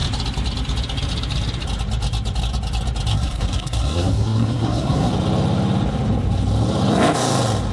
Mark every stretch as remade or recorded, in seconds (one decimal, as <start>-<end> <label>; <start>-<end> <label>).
0.0-3.1 recorded; 3.1-5.1 remade; 5.1-7.7 recorded